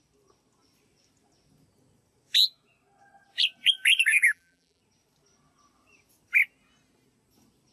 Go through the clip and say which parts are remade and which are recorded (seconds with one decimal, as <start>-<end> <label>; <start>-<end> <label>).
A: 0.0-4.1 recorded; 4.1-4.8 remade; 4.8-7.7 recorded